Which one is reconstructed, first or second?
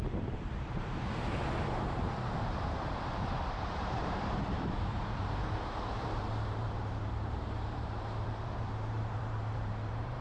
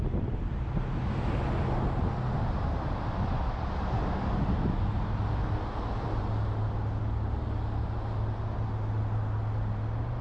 first